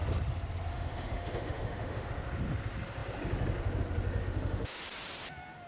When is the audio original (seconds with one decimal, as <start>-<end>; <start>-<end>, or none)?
0.0-0.7; 2.1-4.2; 4.8-5.7